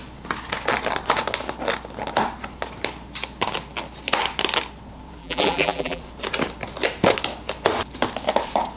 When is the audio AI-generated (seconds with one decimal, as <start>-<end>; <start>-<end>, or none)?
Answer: 5.2-6.0